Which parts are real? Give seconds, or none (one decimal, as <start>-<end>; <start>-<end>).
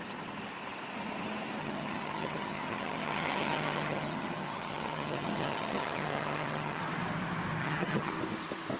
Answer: 0.0-1.6; 6.8-7.6; 8.1-8.8